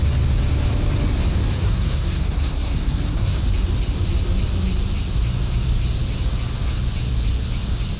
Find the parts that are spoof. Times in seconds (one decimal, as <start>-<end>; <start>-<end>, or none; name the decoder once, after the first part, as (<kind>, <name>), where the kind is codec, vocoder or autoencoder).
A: 1.6-3.4 (codec, SNAC)